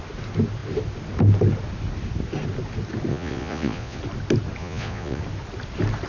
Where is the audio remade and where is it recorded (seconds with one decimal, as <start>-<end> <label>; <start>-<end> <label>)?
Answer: 0.0-3.1 recorded; 3.1-4.0 remade; 4.0-4.6 recorded; 4.6-5.2 remade; 5.2-6.1 recorded